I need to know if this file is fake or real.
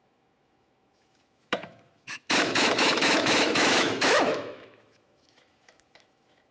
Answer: fake